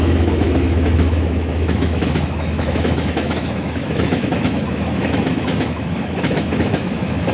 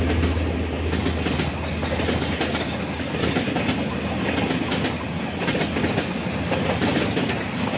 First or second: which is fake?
first